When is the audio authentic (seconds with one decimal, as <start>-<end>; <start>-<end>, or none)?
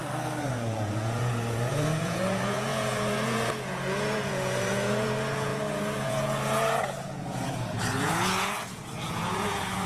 0.0-0.5